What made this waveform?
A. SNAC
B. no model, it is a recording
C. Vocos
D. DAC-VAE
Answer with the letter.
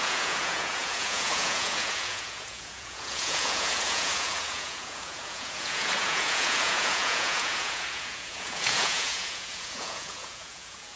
C